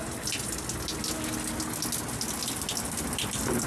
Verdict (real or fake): real